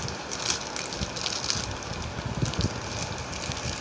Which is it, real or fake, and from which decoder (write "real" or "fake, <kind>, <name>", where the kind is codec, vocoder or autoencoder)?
real